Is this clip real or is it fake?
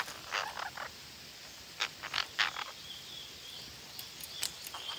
real